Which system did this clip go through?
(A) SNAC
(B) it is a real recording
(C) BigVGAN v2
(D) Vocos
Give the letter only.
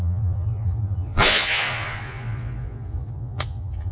D